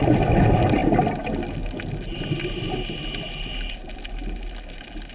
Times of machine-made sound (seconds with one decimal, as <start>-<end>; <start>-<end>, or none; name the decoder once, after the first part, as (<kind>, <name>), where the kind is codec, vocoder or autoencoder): none